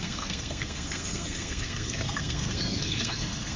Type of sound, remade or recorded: remade